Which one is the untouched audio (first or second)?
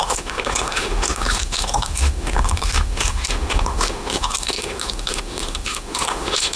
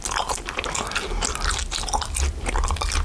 second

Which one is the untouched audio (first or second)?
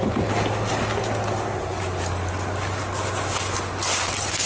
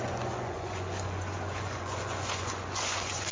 first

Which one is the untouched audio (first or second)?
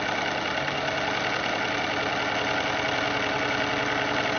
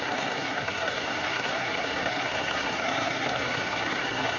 first